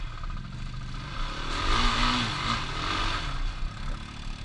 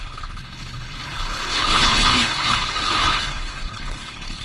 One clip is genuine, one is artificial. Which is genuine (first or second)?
first